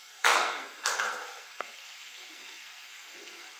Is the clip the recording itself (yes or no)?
no